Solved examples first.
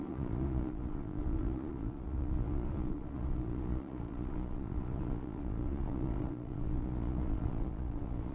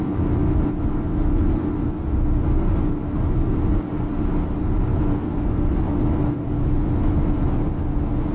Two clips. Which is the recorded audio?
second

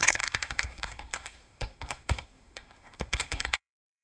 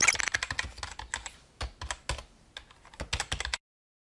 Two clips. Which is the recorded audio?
second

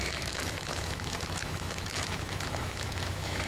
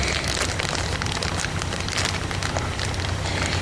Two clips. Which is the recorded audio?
second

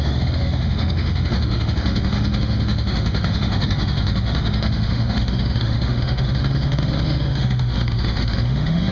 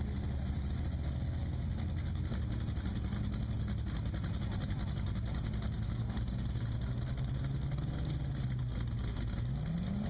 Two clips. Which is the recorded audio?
second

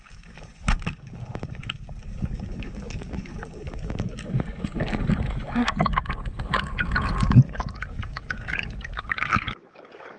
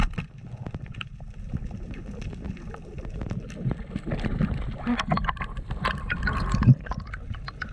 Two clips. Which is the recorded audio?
second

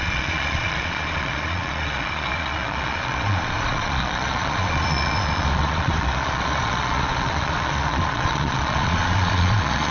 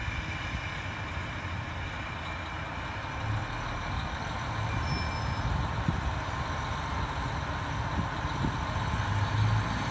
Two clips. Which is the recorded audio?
second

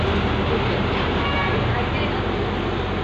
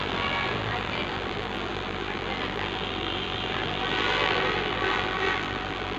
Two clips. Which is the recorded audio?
first